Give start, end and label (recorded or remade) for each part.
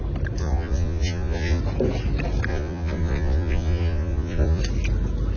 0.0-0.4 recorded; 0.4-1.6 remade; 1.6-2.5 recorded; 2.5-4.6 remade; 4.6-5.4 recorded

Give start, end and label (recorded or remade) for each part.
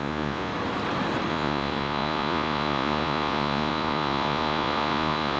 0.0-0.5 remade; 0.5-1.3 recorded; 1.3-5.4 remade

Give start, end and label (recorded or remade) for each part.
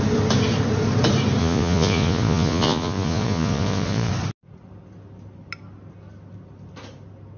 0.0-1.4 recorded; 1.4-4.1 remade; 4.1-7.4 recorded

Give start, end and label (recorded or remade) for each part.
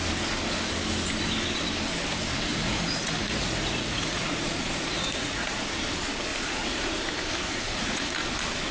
0.0-2.5 recorded; 2.5-5.6 remade; 5.6-6.3 recorded; 6.3-7.0 remade; 7.0-7.5 recorded; 7.5-8.1 remade; 8.1-8.7 recorded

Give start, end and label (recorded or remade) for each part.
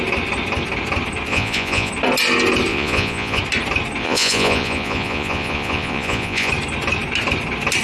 0.0-1.3 recorded; 1.3-1.9 remade; 1.9-2.7 recorded; 2.7-3.4 remade; 3.4-4.0 recorded; 4.0-6.5 remade; 6.5-7.8 recorded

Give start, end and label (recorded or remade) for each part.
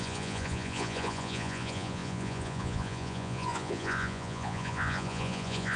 0.0-5.8 remade